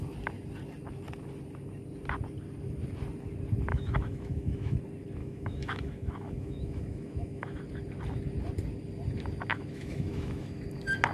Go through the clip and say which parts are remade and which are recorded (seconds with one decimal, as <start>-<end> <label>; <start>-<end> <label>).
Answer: 0.0-3.7 recorded; 3.7-4.8 remade; 4.8-5.2 recorded; 5.2-7.6 remade; 7.6-9.5 recorded; 9.5-10.6 remade; 10.6-11.1 recorded